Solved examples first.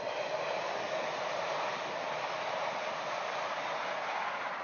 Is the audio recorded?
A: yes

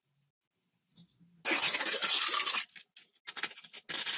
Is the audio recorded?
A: yes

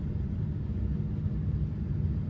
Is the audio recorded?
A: yes